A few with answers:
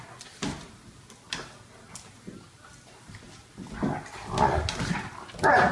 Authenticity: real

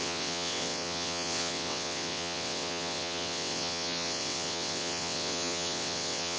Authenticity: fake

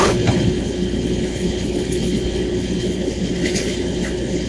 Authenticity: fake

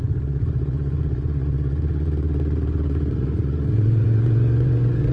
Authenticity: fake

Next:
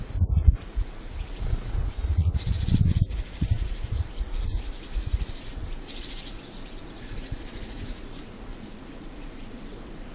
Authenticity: fake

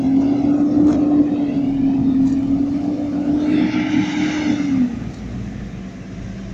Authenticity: real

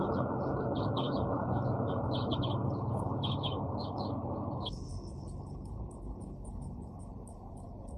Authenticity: fake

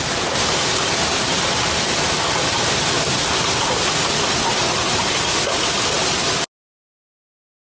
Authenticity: real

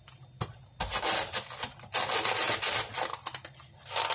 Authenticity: real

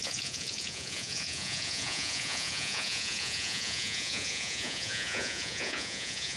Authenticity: fake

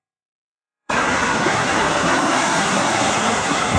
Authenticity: fake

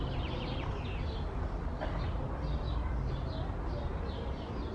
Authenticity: real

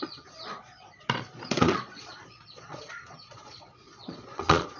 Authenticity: fake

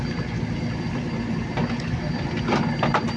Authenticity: real